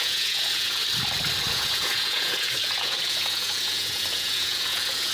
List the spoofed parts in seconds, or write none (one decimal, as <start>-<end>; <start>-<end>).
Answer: 0.0-0.8; 1.5-5.1